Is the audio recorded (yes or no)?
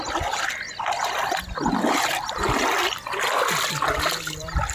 yes